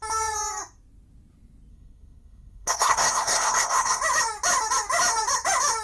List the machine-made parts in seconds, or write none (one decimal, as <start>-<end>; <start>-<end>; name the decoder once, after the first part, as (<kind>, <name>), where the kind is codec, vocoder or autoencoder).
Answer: 1.7-4.0 (codec, SNAC)